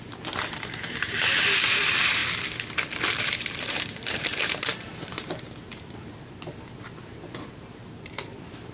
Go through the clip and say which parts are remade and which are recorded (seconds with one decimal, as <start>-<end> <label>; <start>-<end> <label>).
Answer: 0.0-2.2 remade; 2.2-3.3 recorded; 3.3-8.7 remade